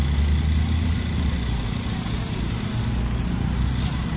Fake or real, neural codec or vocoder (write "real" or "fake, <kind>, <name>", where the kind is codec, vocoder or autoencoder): real